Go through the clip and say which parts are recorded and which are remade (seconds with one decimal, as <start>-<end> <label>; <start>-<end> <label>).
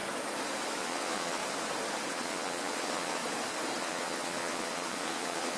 0.0-0.8 recorded; 0.8-1.4 remade; 1.4-2.1 recorded; 2.1-3.2 remade; 3.2-3.8 recorded; 3.8-5.6 remade